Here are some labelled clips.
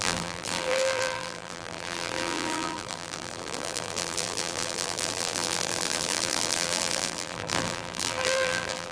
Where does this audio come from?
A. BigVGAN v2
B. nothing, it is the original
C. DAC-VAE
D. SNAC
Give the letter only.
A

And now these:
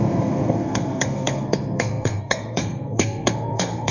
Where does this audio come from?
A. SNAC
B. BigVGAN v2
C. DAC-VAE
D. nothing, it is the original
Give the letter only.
A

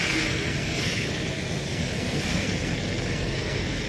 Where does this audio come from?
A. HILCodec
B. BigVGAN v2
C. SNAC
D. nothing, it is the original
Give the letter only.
C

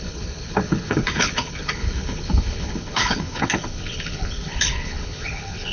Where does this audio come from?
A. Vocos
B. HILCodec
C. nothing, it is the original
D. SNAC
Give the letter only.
B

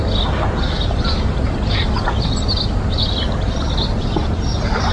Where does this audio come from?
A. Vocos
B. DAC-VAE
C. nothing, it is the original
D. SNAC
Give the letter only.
C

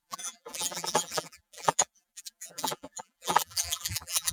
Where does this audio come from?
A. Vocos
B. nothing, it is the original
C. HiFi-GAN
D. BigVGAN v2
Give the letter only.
D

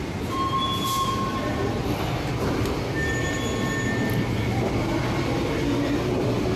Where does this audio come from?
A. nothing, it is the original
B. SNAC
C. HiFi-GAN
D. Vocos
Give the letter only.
A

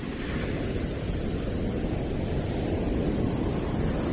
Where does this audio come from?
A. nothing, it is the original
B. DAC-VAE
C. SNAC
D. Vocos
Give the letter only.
A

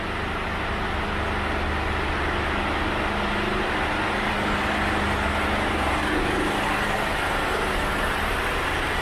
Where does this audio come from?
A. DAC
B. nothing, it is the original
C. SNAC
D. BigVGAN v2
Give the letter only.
B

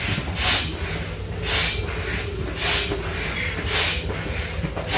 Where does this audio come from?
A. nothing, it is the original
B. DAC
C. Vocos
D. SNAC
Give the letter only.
A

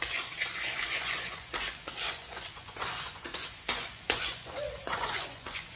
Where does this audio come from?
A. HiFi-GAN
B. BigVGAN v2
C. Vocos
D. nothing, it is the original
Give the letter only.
C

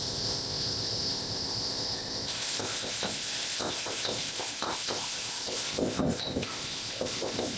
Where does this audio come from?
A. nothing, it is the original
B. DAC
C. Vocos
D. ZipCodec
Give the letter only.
D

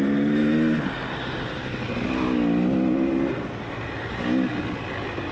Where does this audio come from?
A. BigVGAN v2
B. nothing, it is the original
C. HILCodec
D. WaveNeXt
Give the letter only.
B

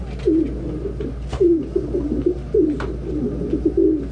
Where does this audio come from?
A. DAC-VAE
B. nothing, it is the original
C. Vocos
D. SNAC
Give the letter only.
B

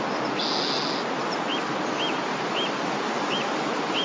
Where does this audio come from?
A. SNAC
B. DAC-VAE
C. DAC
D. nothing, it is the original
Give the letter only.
D